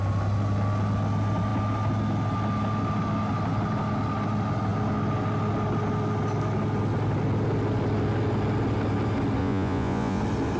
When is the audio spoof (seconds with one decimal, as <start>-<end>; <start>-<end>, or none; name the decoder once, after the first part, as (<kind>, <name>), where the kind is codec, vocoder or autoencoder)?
9.4-10.2 (vocoder, Vocos)